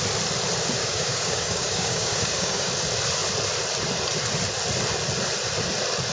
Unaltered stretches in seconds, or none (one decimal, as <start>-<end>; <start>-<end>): 0.0-0.8; 2.7-6.1

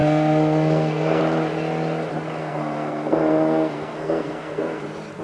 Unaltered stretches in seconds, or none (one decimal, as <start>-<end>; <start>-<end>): 1.2-2.4; 4.8-5.2